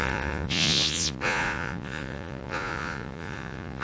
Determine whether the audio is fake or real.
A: fake